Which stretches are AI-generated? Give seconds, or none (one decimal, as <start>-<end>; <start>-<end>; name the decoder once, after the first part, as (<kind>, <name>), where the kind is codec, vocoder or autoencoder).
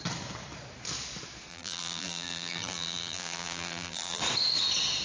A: 1.5-4.2 (vocoder, BigVGAN v2)